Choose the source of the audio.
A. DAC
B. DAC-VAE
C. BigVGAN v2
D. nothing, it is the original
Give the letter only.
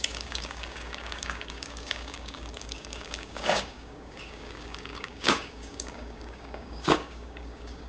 A